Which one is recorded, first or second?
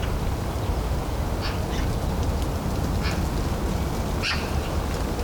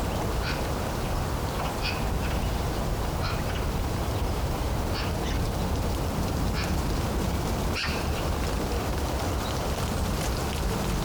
first